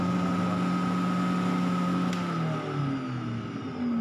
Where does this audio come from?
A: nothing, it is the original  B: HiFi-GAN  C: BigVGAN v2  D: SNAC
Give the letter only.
A